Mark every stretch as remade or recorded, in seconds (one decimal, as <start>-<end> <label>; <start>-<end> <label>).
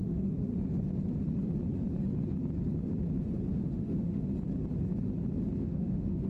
0.0-0.5 remade; 0.5-3.5 recorded; 3.5-4.3 remade; 4.3-5.6 recorded; 5.6-6.3 remade